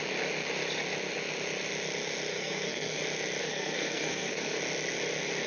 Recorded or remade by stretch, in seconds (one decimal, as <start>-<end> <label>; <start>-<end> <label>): 0.0-2.3 recorded; 2.3-3.0 remade; 3.0-3.4 recorded; 3.4-4.6 remade; 4.6-5.5 recorded